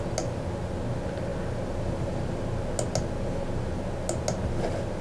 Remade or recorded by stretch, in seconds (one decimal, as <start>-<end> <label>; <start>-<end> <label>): 0.0-5.0 recorded